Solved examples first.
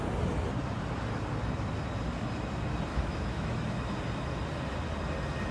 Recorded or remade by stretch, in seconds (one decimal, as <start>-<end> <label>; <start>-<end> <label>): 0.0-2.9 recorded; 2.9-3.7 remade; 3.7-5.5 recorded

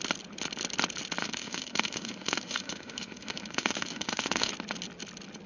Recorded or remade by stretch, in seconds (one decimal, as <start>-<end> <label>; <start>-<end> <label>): 0.0-1.2 recorded; 1.2-4.5 remade; 4.5-5.5 recorded

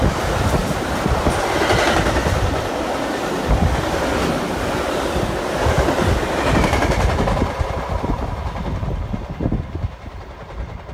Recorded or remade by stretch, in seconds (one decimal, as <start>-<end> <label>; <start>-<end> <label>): 0.0-10.9 recorded

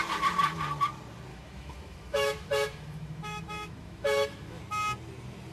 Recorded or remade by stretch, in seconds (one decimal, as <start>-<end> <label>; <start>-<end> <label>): 0.0-1.3 recorded; 1.3-4.6 remade; 4.6-5.5 recorded